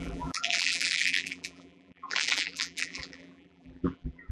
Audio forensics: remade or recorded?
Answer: remade